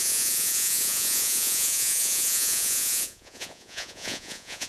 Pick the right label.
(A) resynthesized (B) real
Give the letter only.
A